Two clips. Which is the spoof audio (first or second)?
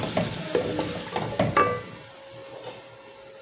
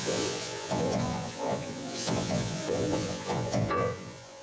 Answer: second